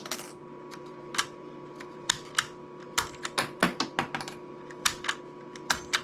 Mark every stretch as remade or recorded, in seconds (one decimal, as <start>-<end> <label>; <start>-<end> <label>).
0.0-0.4 recorded; 0.4-2.3 remade; 2.3-3.6 recorded; 3.6-4.5 remade; 4.5-6.0 recorded